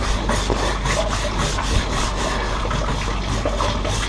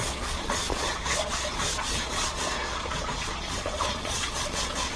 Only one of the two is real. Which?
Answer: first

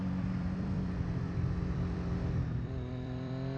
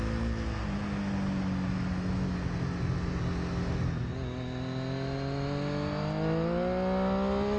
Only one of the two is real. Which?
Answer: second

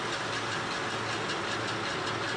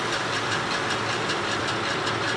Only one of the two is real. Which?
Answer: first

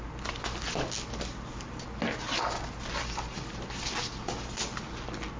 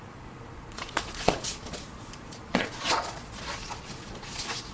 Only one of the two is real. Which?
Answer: first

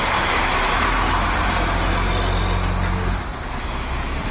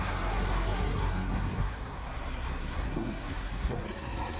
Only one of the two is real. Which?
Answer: first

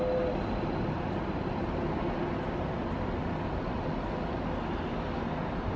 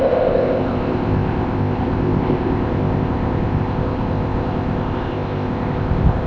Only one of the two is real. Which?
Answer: first